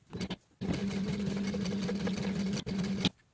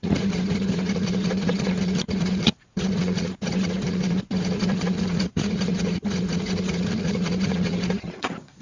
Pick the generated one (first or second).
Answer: second